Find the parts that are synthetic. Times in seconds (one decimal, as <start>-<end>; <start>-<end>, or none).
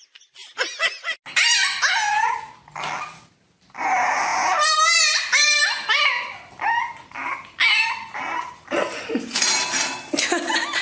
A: none